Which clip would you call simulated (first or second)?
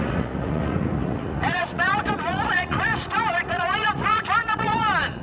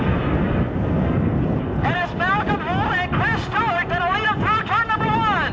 first